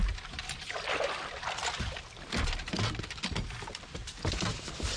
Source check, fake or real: real